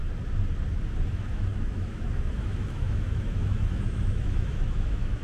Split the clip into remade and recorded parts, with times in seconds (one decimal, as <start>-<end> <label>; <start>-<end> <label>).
0.0-1.1 recorded; 1.1-5.2 remade